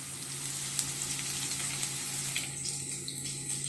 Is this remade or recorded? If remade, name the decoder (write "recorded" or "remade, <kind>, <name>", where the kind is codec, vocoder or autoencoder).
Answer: recorded